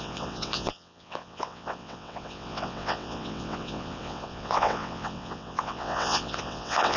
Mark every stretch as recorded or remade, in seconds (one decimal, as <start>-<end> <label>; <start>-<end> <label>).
0.0-7.0 remade

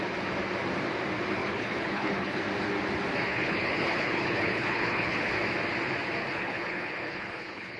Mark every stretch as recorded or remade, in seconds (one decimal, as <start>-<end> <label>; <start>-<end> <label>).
0.0-1.4 recorded; 1.4-2.4 remade; 2.4-3.3 recorded; 3.3-5.3 remade; 5.3-6.2 recorded; 6.2-7.8 remade

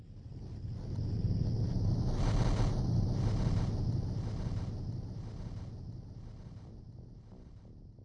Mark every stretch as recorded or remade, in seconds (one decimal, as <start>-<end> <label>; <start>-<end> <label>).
0.0-8.0 recorded

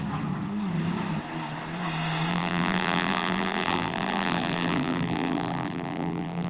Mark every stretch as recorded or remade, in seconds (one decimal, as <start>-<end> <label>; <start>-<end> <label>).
0.0-2.3 recorded; 2.3-6.5 remade

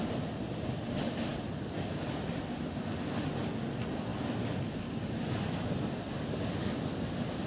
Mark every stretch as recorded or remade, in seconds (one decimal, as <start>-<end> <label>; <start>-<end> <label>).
0.0-7.5 recorded

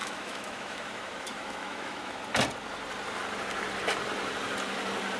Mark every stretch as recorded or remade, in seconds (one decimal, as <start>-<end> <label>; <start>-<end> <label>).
0.0-2.2 remade; 2.2-5.2 recorded

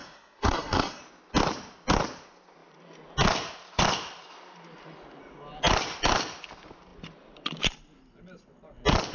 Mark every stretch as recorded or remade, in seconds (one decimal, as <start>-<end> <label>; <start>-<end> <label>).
0.0-1.0 remade; 1.0-9.1 recorded